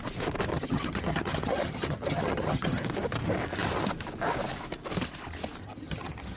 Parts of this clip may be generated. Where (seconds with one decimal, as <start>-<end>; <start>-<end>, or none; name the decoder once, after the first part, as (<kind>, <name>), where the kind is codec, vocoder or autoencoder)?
0.5-2.8 (vocoder, HiFi-GAN); 5.6-6.4

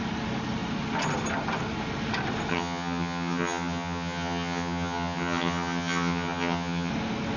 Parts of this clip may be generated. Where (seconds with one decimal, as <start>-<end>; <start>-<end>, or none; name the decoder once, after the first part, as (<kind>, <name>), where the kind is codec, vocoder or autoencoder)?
2.5-6.9 (vocoder, HiFi-GAN)

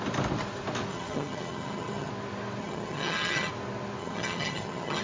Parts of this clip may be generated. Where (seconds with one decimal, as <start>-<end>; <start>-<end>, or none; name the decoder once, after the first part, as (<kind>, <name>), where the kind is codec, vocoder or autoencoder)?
0.9-2.1 (vocoder, HiFi-GAN); 2.6-3.5; 4.0-5.0

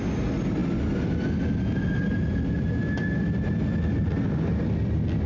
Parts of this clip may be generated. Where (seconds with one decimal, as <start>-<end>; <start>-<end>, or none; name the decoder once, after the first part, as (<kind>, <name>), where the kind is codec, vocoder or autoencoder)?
none

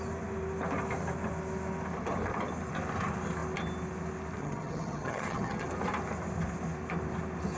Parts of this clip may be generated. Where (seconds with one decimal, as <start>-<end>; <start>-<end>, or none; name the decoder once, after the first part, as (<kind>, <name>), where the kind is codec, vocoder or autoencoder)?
4.4-5.7 (vocoder, HiFi-GAN)

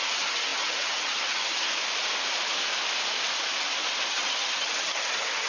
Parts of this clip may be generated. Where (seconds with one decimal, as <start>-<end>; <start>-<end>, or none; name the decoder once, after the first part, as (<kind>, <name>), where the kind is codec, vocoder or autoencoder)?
0.0-1.7 (vocoder, HiFi-GAN); 4.1-5.5